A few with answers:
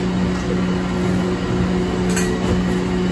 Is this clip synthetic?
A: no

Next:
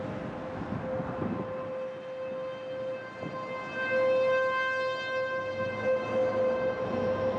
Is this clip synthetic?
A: no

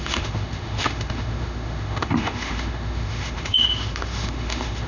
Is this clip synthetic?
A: yes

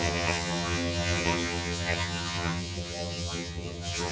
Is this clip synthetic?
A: yes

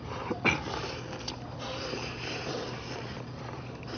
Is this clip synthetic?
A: no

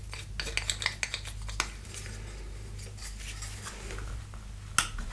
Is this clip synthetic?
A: no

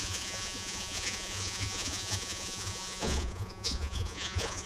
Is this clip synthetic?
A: yes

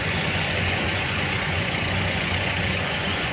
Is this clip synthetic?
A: yes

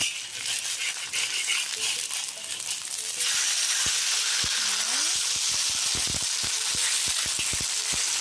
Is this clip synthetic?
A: no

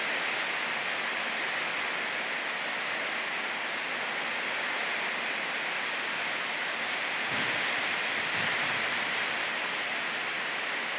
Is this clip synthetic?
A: no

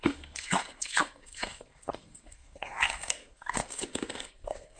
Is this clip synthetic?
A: yes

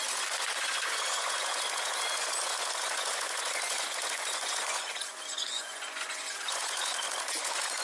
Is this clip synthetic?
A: yes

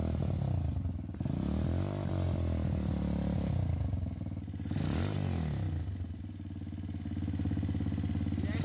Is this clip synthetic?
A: no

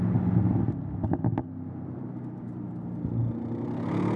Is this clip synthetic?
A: no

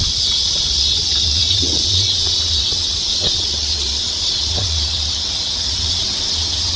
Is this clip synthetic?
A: yes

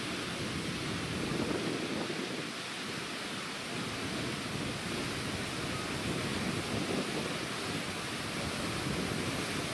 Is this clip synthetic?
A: no